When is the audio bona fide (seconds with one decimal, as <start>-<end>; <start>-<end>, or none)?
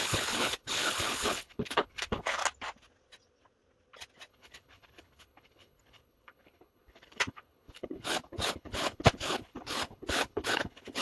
2.4-4.3